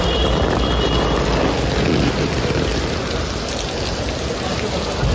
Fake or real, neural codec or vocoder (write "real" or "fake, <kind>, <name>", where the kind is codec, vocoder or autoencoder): real